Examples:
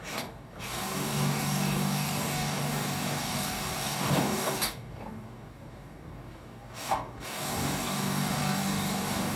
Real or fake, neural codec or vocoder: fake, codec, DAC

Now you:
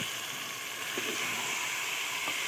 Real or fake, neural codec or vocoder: real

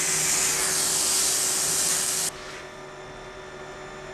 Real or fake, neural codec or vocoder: real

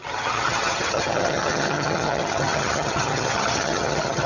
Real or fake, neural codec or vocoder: fake, vocoder, HiFi-GAN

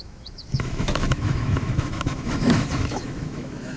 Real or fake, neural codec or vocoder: fake, autoencoder, DAC-VAE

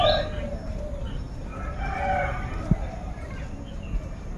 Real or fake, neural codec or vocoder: fake, vocoder, BigVGAN v2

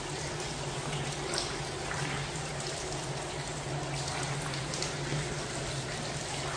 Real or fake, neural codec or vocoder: real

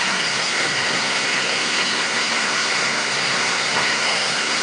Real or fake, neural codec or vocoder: fake, codec, SNAC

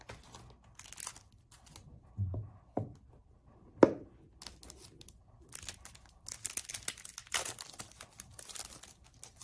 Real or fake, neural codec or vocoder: real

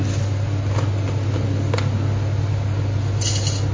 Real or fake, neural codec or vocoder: real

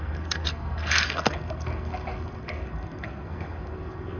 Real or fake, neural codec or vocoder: fake, codec, SNAC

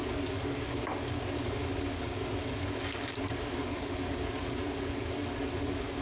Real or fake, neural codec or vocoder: fake, codec, DAC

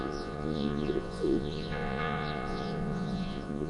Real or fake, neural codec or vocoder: fake, vocoder, Vocos